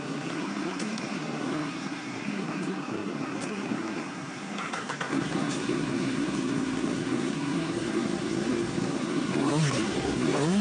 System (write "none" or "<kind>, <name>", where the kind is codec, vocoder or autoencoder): codec, SNAC